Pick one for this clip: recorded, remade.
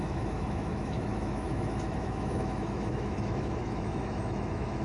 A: remade